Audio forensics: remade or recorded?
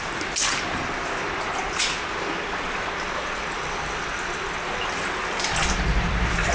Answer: recorded